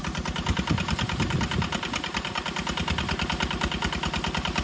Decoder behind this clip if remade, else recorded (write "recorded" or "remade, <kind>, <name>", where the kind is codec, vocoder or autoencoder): recorded